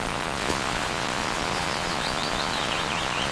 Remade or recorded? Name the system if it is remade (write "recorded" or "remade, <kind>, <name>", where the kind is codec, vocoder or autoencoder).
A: remade, vocoder, Vocos